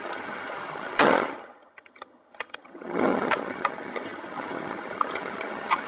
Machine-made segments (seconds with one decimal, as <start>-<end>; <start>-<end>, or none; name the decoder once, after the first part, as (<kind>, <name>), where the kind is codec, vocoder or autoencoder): 0.0-5.9 (vocoder, HiFi-GAN)